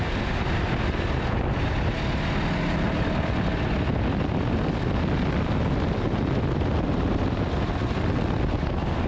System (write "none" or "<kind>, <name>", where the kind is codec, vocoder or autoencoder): none